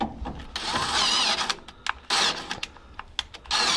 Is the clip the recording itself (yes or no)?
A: yes